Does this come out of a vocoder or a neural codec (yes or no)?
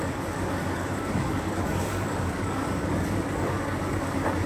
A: yes